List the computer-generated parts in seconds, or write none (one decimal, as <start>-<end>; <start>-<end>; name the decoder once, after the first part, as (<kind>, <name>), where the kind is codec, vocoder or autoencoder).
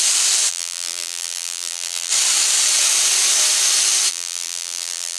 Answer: 0.5-2.1 (vocoder, BigVGAN v2); 4.1-5.2